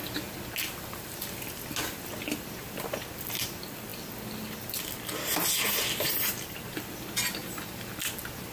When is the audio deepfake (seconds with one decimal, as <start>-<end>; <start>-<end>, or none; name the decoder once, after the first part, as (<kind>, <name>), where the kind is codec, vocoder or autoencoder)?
none